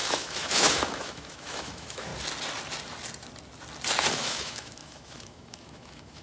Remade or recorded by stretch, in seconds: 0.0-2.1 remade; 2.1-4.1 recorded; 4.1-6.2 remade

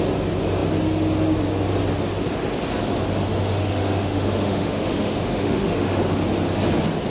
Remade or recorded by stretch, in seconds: 0.0-3.2 recorded; 3.2-6.0 remade; 6.0-7.1 recorded

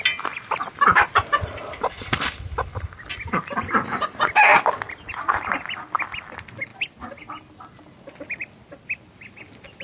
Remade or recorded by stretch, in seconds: 0.0-9.8 recorded

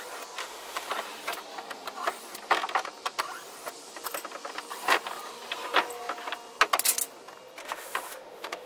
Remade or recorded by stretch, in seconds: 0.0-0.4 recorded; 0.4-0.9 remade; 0.9-7.6 recorded; 7.6-8.7 remade

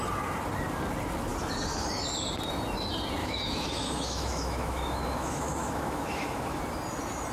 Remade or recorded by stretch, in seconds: 0.0-3.2 recorded; 3.2-6.6 remade; 6.6-7.3 recorded

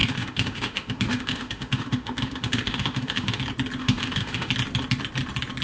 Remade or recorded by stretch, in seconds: 0.0-3.4 remade; 3.4-3.8 recorded; 3.8-4.5 remade; 4.5-5.6 recorded